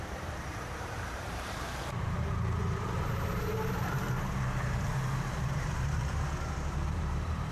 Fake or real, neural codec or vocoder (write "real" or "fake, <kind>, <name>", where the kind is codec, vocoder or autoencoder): fake, vocoder, BigVGAN v2